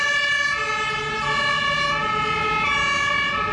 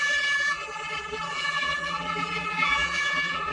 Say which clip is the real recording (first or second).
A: first